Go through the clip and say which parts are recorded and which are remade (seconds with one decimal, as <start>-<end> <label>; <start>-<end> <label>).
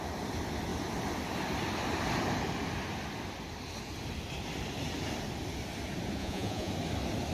0.0-6.2 recorded; 6.2-6.7 remade; 6.7-7.3 recorded